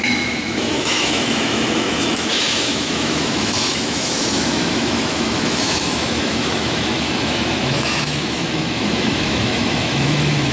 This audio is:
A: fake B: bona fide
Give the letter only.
A